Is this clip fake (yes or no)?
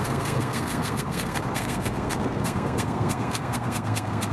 yes